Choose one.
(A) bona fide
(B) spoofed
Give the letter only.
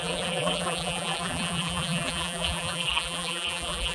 B